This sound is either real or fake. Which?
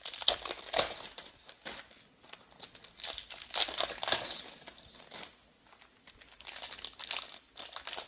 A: real